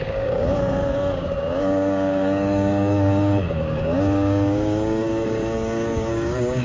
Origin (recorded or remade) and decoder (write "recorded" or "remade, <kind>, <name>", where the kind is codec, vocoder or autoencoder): remade, codec, DAC